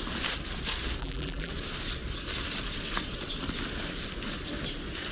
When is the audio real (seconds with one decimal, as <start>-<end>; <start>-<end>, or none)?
0.0-1.0; 1.5-5.1